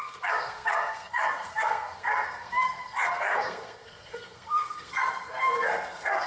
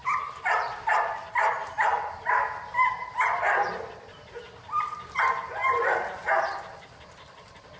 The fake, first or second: first